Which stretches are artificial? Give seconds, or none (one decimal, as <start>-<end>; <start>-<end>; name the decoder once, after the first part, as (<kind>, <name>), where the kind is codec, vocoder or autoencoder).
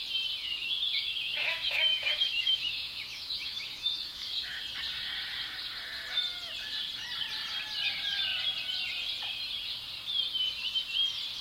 0.4-4.6 (autoencoder, DAC-VAE)